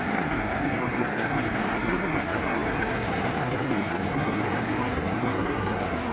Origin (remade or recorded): remade